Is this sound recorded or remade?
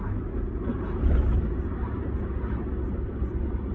recorded